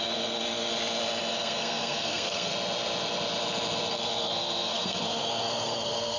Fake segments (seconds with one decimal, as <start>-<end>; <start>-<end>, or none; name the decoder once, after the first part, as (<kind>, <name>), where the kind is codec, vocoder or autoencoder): 0.0-0.7 (codec, SNAC); 1.3-2.5; 3.9-6.2